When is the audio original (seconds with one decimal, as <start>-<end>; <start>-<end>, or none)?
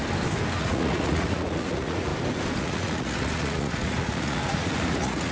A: 0.0-0.6; 2.1-2.6